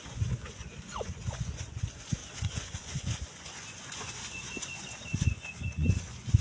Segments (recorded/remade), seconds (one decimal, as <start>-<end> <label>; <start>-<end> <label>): 0.0-6.4 remade